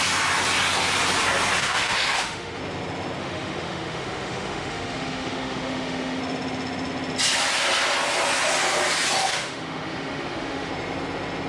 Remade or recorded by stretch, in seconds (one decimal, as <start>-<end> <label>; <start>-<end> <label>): 0.0-1.6 recorded; 1.6-2.6 remade; 2.6-3.2 recorded; 3.2-6.2 remade; 6.2-9.2 recorded; 9.2-10.7 remade; 10.7-11.5 recorded